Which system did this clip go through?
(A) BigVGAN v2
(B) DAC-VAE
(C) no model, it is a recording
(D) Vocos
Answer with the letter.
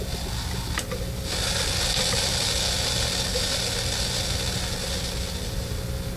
C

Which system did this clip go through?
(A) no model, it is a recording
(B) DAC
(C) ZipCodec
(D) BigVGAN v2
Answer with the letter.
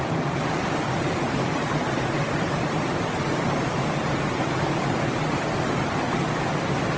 A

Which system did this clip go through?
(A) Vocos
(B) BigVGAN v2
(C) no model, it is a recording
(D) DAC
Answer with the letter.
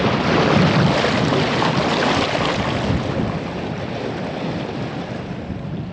C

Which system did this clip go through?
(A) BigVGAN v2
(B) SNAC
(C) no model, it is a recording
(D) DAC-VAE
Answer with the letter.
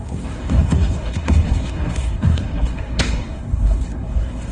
B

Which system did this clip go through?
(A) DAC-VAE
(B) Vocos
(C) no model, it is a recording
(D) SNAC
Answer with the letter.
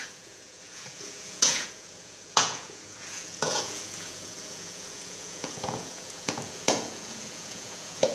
B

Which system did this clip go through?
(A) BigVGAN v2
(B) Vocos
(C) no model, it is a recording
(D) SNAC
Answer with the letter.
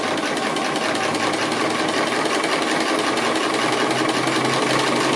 C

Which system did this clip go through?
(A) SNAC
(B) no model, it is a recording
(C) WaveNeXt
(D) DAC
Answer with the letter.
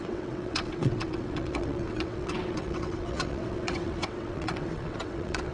C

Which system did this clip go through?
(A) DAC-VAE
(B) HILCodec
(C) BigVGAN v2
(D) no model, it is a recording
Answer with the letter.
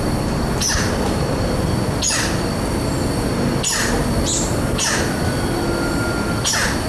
D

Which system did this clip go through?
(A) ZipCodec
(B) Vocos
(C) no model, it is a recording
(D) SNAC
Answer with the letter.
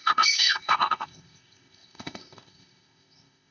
A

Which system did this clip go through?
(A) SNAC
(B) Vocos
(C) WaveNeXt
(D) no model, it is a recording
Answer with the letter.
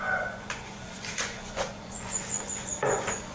B